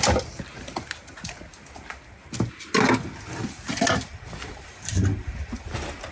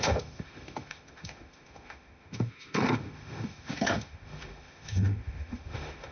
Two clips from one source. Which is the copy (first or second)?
second